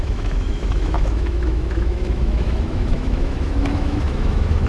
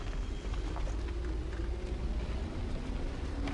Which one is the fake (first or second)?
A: first